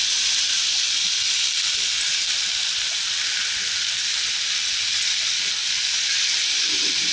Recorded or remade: recorded